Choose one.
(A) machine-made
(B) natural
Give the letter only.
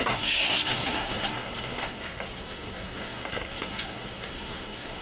A